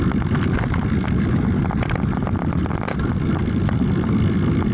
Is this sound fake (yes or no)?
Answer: no